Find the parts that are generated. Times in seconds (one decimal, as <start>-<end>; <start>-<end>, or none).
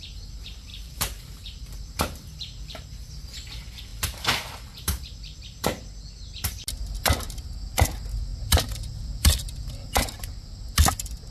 0.7-3.1; 3.9-5.8; 8.3-10.3